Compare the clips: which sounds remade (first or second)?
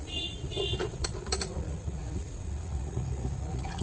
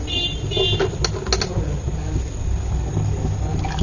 first